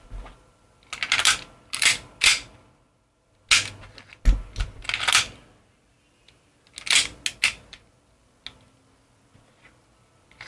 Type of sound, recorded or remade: recorded